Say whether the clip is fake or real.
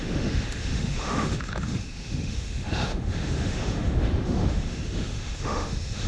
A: fake